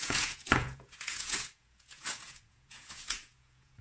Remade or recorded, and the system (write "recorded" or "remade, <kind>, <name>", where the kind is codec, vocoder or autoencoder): remade, vocoder, Vocos